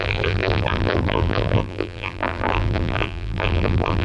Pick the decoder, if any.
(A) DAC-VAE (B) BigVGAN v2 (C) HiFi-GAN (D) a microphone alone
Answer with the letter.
B